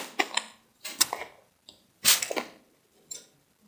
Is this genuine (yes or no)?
no